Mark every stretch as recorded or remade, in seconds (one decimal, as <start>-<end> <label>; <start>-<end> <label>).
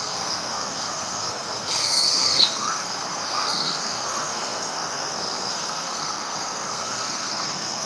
0.0-7.9 remade